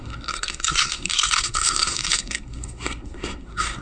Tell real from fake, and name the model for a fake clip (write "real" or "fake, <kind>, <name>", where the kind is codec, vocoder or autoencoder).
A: fake, codec, SNAC